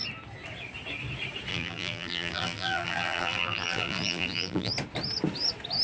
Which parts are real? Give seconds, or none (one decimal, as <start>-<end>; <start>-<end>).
0.0-1.5; 4.7-5.8